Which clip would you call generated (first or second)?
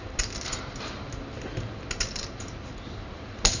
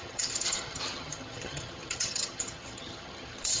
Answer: second